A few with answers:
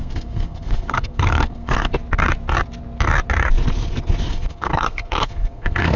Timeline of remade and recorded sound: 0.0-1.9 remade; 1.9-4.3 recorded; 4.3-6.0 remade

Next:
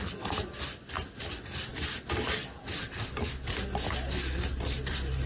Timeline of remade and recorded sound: 0.0-5.3 recorded

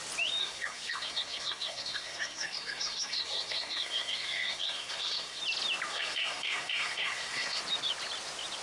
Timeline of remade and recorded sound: 0.0-0.4 recorded; 0.4-5.4 remade; 5.4-5.9 recorded; 5.9-7.6 remade; 7.6-8.6 recorded

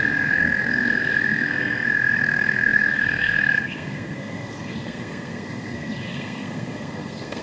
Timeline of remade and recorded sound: 0.0-7.4 remade

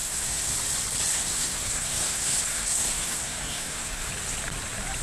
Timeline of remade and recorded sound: 0.0-0.5 remade; 0.5-1.1 recorded; 1.1-4.1 remade; 4.1-5.0 recorded

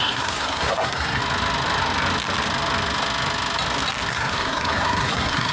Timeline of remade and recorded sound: 0.0-1.2 remade; 1.2-4.1 recorded; 4.1-5.5 remade

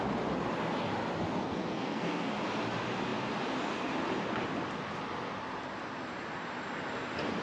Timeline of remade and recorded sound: 0.0-1.4 recorded; 1.4-2.3 remade; 2.3-7.4 recorded

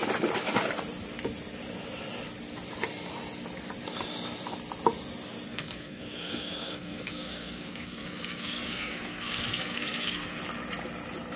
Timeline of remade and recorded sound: 0.0-5.5 recorded; 5.5-10.4 remade; 10.4-11.4 recorded